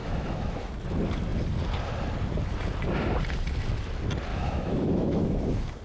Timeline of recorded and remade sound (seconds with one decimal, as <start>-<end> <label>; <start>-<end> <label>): 0.0-0.7 remade; 0.7-4.3 recorded; 4.3-5.3 remade; 5.3-5.8 recorded